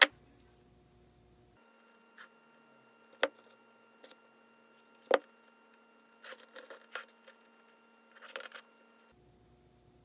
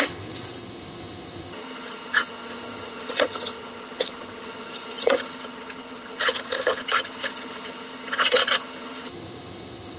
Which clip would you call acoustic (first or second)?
first